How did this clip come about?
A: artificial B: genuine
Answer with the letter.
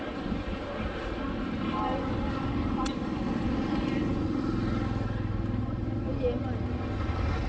B